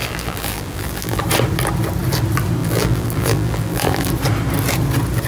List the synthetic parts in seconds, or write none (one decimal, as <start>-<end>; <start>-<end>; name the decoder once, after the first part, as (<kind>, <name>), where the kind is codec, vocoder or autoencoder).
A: 0.0-1.2 (vocoder, BigVGAN v2); 2.6-4.1